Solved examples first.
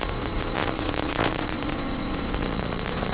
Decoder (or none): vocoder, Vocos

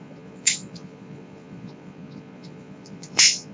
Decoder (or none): vocoder, Vocos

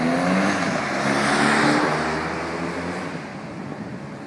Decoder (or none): none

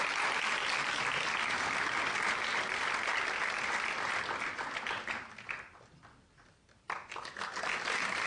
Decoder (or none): none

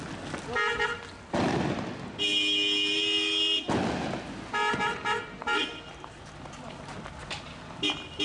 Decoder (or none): none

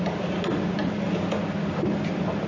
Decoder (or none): none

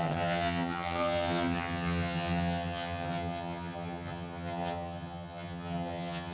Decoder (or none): vocoder, HiFi-GAN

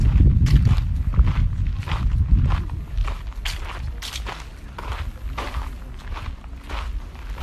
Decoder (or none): none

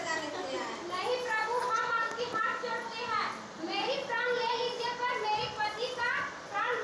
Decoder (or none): none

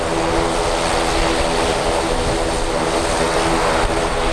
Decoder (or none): none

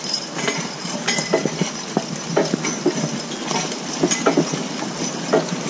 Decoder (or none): none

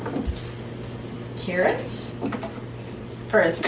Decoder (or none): none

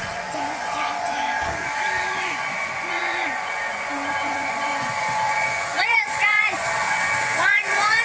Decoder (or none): vocoder, Vocos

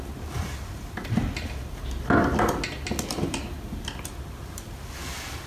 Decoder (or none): none